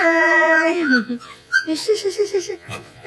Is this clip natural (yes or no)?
no